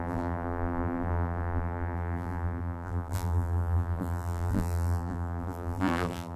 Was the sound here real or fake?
fake